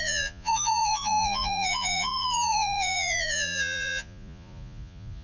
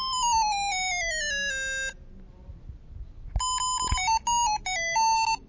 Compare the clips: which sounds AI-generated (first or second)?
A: first